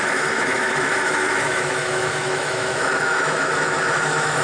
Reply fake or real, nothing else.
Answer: fake